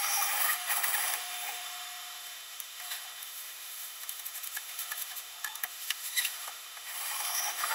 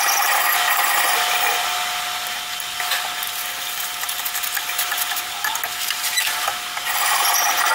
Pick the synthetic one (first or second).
first